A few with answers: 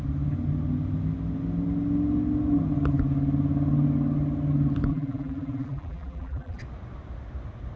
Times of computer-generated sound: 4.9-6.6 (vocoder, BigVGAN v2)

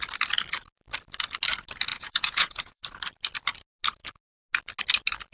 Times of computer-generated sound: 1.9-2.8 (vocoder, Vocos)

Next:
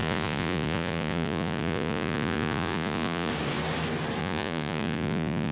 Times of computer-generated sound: 0.0-3.3 (vocoder, Vocos); 4.2-5.5

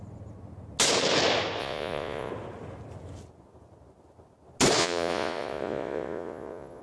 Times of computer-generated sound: 1.6-2.3 (vocoder, Vocos); 4.8-6.8

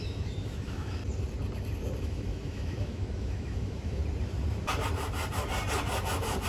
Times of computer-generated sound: 0.0-1.0 (autoencoder, DAC-VAE); 2.0-4.0